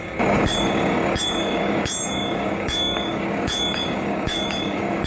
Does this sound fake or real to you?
fake